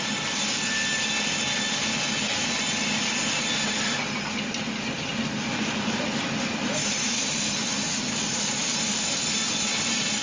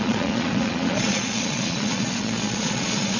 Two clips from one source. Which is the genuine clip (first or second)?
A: first